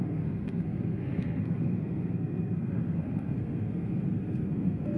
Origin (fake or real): fake